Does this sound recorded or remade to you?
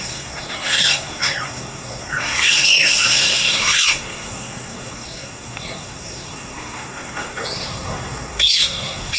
remade